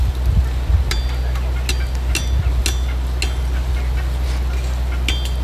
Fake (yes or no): no